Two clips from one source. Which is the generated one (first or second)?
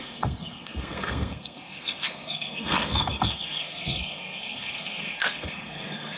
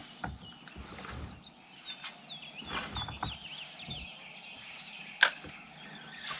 first